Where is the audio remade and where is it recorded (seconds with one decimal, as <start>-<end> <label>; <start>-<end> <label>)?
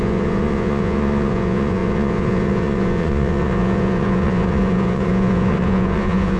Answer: 0.0-6.4 remade